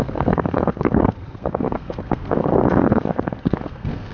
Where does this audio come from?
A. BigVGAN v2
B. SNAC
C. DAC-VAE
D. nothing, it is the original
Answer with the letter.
B